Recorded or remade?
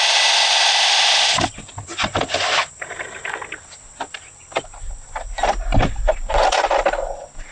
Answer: recorded